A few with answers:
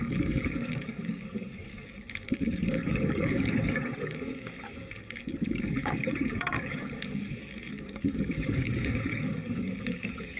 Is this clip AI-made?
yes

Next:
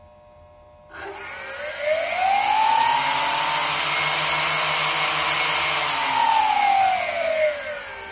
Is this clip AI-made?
no